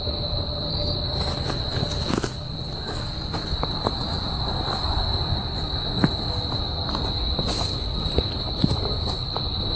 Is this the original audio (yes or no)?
yes